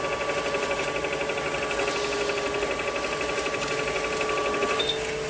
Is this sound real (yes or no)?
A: yes